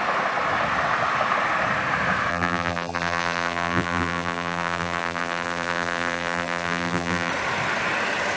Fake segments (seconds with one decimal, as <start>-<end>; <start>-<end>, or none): 2.3-7.3